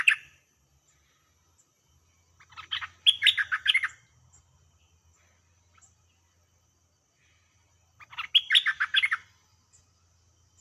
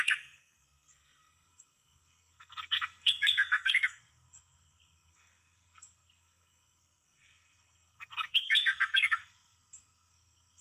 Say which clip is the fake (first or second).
second